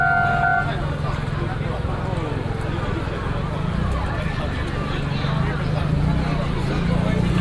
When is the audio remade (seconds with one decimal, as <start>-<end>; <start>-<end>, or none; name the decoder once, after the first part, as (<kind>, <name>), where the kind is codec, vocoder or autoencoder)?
none